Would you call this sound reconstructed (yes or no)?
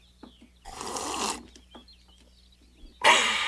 no